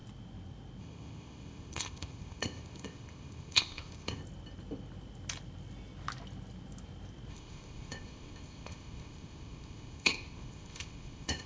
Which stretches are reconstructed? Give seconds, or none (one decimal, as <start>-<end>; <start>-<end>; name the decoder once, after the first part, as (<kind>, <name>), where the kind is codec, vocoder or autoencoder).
0.8-4.2 (codec, ZipCodec); 7.3-11.5

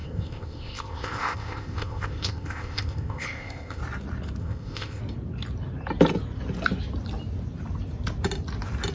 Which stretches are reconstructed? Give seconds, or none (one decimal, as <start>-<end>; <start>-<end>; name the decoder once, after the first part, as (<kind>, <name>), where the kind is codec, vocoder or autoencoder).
0.0-3.8 (codec, ZipCodec); 4.4-5.0

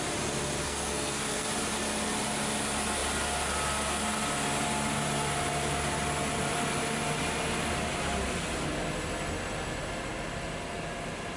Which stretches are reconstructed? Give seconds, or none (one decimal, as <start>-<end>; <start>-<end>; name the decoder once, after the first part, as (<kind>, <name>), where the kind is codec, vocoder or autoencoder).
0.6-1.5 (codec, SNAC)

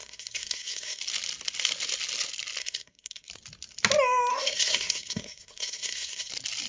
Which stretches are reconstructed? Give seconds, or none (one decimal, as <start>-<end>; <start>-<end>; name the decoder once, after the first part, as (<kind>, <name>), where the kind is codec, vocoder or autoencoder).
0.0-1.0 (codec, SNAC); 2.6-3.3; 4.3-6.3

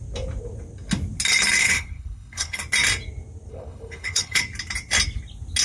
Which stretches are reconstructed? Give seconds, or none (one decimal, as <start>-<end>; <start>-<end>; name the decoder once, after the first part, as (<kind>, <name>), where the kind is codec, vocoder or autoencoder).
1.6-2.6 (codec, HILCodec); 3.5-4.4

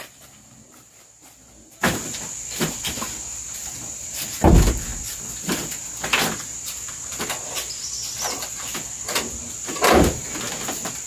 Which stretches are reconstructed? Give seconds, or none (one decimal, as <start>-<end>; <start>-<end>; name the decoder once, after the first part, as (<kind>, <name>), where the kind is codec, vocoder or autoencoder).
none